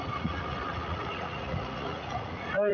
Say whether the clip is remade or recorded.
remade